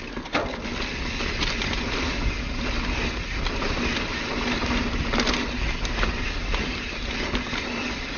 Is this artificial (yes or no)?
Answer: no